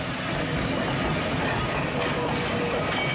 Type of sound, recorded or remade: recorded